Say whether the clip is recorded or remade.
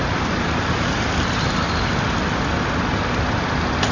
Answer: recorded